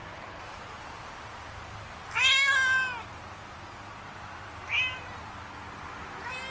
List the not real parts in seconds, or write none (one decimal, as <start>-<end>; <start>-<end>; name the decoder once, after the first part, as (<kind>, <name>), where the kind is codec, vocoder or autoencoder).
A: none